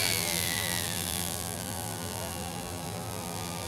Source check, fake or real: fake